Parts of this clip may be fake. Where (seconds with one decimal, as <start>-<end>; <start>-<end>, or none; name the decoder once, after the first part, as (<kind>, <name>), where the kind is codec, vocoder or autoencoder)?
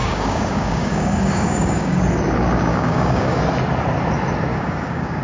0.0-2.0 (codec, DAC); 2.7-3.4; 4.5-5.2